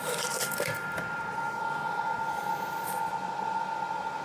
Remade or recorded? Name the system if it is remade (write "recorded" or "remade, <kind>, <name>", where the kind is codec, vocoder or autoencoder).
recorded